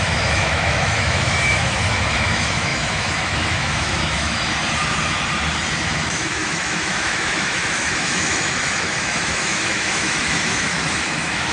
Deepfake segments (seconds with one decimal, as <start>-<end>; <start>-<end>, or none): 0.0-4.5; 5.8-11.5